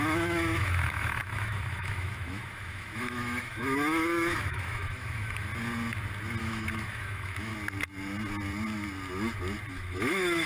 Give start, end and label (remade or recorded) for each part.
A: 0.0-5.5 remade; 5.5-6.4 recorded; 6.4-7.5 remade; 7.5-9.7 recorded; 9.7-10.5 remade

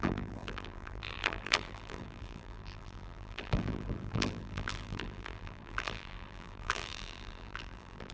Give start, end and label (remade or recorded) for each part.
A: 0.0-8.1 remade

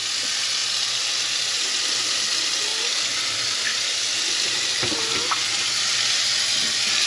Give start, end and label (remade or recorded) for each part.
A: 0.0-7.1 recorded